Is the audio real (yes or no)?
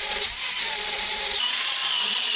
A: no